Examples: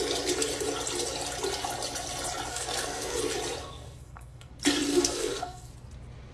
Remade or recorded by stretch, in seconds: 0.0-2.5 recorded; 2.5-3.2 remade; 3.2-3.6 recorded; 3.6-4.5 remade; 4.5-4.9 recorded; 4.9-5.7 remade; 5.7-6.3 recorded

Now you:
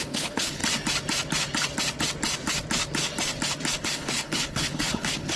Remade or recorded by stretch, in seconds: 0.0-0.6 remade; 0.6-3.8 recorded; 3.8-5.4 remade

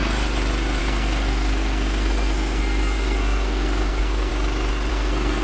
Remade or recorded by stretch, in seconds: 0.0-0.8 recorded; 0.8-4.3 remade; 4.3-4.9 recorded; 4.9-5.4 remade

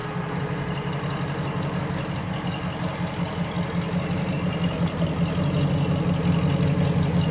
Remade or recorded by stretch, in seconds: 0.0-7.3 recorded

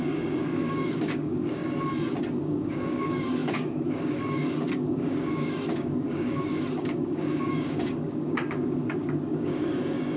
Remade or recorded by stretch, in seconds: 0.0-1.6 remade; 1.6-2.4 recorded; 2.4-10.2 remade

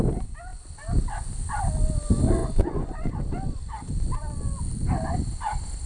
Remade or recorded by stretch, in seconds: 0.0-2.4 recorded; 2.4-3.2 remade; 3.2-5.9 recorded

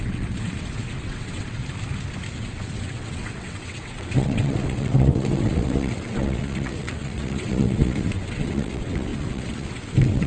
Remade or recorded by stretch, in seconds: 0.0-1.6 remade; 1.6-2.4 recorded; 2.4-10.3 remade

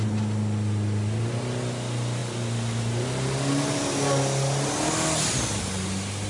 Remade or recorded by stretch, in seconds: 0.0-6.3 recorded